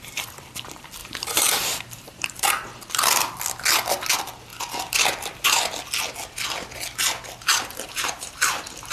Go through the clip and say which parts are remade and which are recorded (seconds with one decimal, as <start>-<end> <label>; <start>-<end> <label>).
0.0-1.0 recorded; 1.0-2.5 remade; 2.5-7.5 recorded; 7.5-8.4 remade; 8.4-8.9 recorded